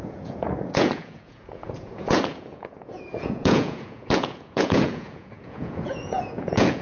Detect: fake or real fake